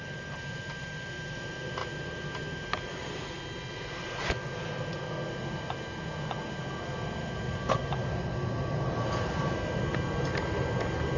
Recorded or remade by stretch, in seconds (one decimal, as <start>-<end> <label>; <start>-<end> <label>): 0.0-11.2 recorded